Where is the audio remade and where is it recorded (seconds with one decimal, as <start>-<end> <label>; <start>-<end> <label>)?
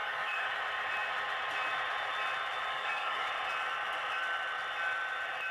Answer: 0.0-0.5 remade; 0.5-2.7 recorded; 2.7-3.3 remade; 3.3-5.5 recorded